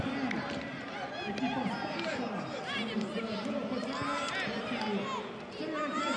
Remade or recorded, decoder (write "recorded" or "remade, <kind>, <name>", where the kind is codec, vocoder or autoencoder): recorded